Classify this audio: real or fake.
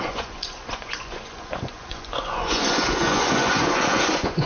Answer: fake